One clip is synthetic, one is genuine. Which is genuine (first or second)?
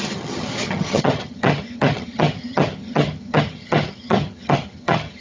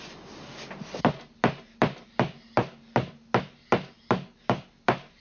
second